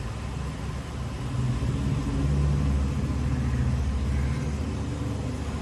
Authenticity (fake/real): real